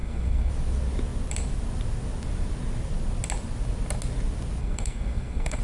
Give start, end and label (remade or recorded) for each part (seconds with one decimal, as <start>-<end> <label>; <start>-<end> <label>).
0.0-0.5 remade; 0.5-4.6 recorded; 4.6-5.6 remade